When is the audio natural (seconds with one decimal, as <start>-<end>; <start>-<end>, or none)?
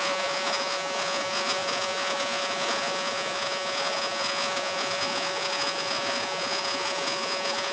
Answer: none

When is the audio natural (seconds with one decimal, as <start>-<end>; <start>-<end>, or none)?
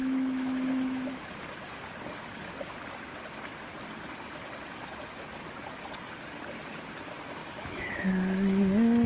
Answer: 1.1-7.4; 8.1-9.1